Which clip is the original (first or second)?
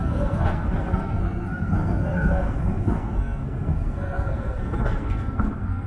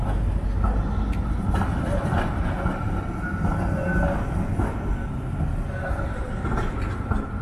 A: second